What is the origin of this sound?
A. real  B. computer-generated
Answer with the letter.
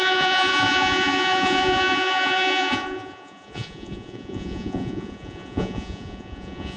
B